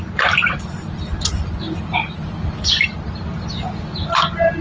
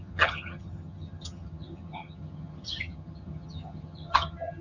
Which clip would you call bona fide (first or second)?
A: first